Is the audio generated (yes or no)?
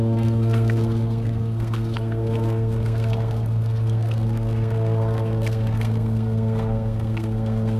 yes